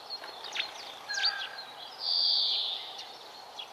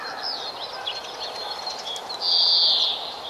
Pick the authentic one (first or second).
second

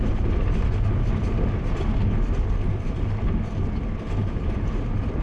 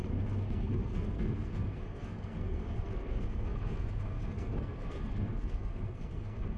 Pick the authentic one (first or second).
first